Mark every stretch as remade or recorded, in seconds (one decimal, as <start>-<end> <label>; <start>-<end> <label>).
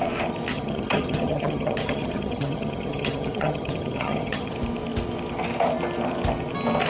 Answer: 0.0-0.5 recorded; 0.5-4.5 remade; 4.5-6.9 recorded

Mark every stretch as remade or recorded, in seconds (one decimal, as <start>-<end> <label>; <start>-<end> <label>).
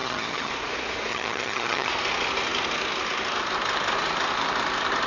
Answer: 0.0-0.5 remade; 0.5-1.1 recorded; 1.1-1.9 remade; 1.9-5.1 recorded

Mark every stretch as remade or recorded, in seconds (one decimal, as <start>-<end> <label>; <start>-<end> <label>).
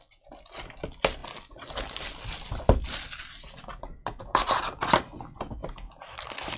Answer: 0.0-6.6 recorded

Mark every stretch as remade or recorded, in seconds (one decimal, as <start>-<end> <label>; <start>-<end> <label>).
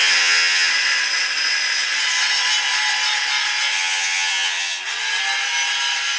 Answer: 0.0-0.7 remade; 0.7-3.7 recorded; 3.7-4.8 remade; 4.8-6.2 recorded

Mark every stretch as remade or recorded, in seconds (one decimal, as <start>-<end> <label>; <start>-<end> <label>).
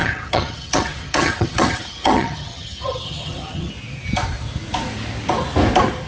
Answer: 0.0-3.7 remade; 3.7-6.1 recorded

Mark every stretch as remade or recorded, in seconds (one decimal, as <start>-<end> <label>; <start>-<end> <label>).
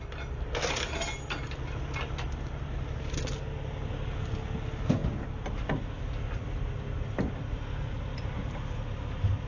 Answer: 0.0-9.5 recorded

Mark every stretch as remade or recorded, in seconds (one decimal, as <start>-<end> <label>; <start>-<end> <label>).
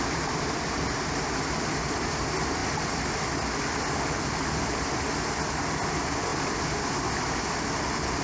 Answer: 0.0-8.2 recorded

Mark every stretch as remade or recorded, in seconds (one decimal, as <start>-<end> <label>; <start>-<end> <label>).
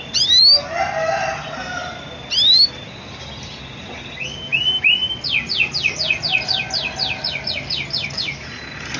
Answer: 0.0-9.0 recorded